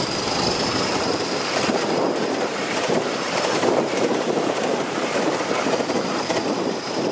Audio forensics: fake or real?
fake